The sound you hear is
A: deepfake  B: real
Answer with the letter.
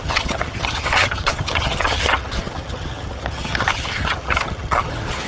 A